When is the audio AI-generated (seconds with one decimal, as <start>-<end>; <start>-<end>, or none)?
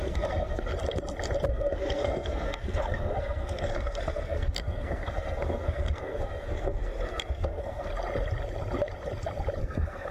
0.0-0.7; 1.5-7.9; 9.6-10.1